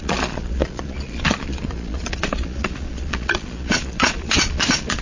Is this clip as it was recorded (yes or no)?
no